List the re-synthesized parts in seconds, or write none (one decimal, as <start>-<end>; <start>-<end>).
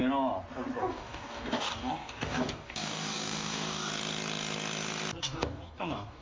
0.8-3.9; 5.2-6.2